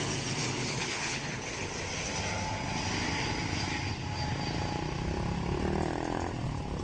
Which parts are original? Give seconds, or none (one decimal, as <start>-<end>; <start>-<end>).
0.0-0.6; 1.7-6.8